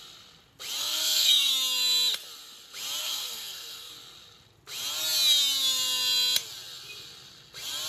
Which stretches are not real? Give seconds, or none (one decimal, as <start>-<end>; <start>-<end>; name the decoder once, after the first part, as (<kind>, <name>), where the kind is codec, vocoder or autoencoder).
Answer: 0.8-1.5 (codec, SNAC); 3.0-3.9